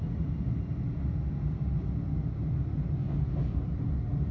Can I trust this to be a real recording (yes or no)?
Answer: yes